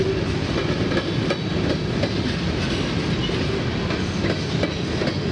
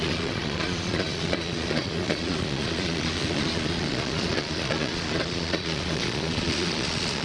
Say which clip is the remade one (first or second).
second